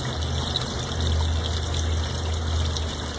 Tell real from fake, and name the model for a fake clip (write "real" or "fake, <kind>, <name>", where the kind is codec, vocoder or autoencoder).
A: real